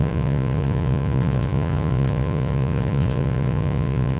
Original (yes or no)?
no